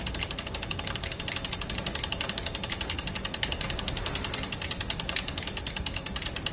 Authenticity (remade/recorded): recorded